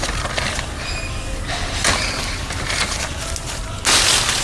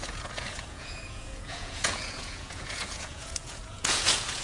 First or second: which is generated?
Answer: second